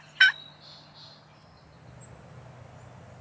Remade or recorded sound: recorded